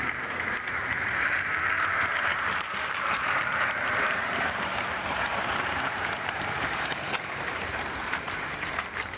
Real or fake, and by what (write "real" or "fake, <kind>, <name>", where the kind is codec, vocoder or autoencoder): fake, vocoder, BigVGAN v2